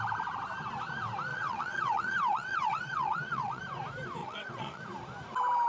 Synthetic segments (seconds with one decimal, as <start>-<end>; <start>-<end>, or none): 1.3-3.6; 4.2-4.8